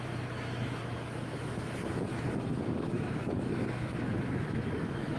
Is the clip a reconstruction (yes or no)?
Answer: yes